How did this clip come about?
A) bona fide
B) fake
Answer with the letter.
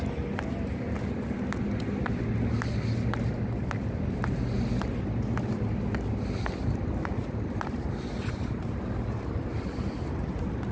A